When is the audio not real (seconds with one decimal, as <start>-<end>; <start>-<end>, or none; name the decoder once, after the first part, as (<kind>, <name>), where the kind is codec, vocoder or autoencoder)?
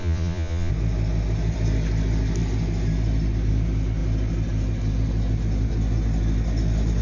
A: 0.0-0.7 (vocoder, Vocos)